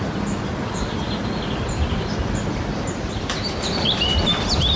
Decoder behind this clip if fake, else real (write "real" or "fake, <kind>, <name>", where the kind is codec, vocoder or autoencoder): real